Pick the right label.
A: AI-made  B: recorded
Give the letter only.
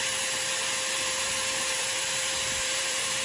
A